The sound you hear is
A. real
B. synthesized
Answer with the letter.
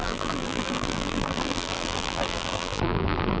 B